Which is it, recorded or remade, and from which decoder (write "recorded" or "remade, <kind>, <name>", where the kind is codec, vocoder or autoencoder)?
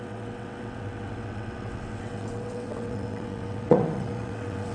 remade, vocoder, WaveNeXt